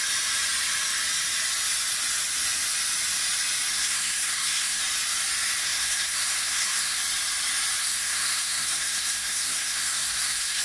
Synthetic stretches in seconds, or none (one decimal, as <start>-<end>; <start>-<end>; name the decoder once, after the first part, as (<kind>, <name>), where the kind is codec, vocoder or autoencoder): 3.7-4.8 (codec, SNAC); 5.6-7.0; 7.8-10.6